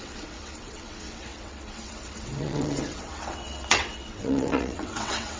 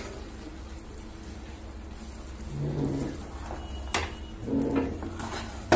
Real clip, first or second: second